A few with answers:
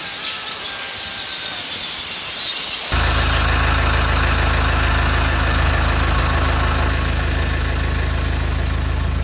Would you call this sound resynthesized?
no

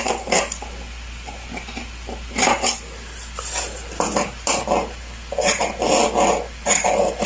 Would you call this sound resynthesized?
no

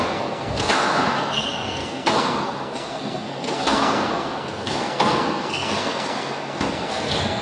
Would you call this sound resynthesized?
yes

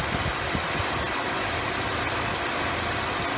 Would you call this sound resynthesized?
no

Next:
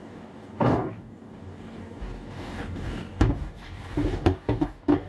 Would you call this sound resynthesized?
yes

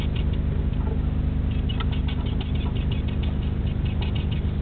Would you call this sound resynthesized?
no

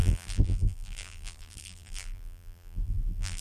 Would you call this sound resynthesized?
yes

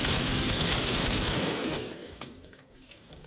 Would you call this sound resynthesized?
yes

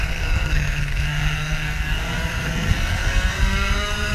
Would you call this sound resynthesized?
yes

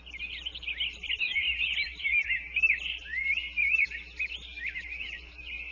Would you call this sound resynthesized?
no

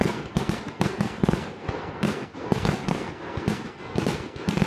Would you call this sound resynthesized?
yes